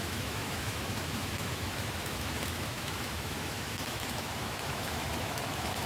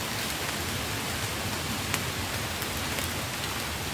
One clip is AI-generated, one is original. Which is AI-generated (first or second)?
first